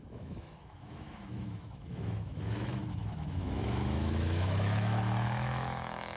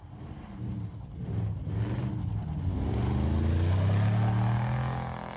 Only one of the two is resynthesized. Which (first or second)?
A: first